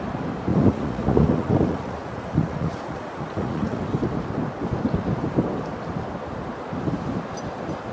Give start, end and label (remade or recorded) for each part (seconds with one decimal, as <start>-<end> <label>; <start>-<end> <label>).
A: 0.0-0.5 recorded; 0.5-3.8 remade; 3.8-7.9 recorded